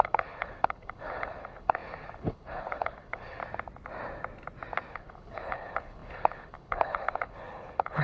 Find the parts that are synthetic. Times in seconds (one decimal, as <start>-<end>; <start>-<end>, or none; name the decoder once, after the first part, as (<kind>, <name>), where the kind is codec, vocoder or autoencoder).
0.0-3.4 (codec, HILCodec); 4.9-8.0